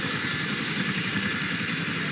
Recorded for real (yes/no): yes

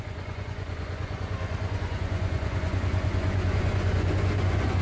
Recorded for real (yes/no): no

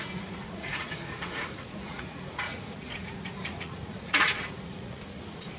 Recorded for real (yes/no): no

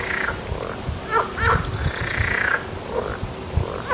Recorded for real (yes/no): yes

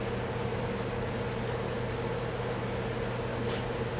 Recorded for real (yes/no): yes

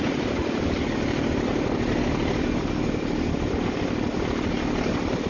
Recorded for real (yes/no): yes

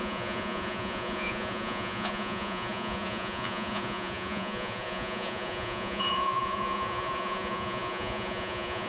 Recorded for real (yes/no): no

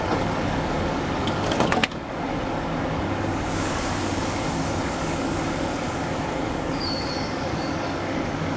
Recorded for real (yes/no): no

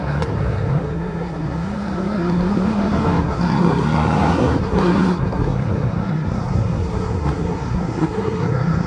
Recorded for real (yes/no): no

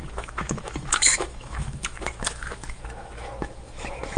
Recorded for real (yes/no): no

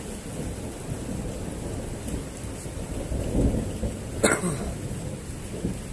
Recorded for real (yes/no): yes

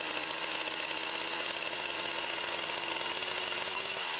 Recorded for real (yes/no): yes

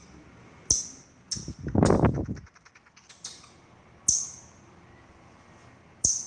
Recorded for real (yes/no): yes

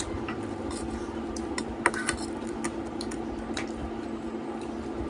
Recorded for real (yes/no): yes